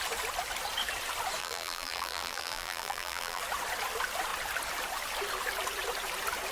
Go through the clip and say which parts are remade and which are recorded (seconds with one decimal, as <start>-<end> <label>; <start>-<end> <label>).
0.0-1.4 recorded; 1.4-3.4 remade; 3.4-6.5 recorded